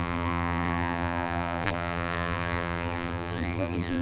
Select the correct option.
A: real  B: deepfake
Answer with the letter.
B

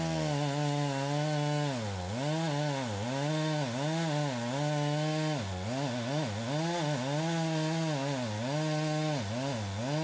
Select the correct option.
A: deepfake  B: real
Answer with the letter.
B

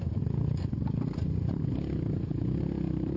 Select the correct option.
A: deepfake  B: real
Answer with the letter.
B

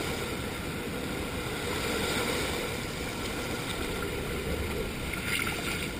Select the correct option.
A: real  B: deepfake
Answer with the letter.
A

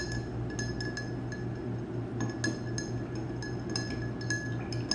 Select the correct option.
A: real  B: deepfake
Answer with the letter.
A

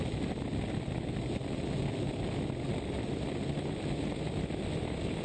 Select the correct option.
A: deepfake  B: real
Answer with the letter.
B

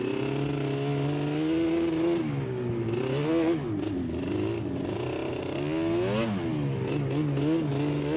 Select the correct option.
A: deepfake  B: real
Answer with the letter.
B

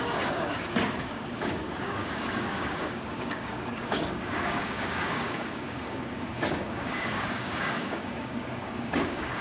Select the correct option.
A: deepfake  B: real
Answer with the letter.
A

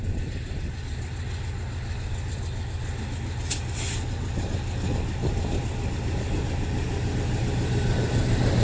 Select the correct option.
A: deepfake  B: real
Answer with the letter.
B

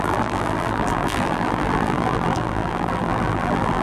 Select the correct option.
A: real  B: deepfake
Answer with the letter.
B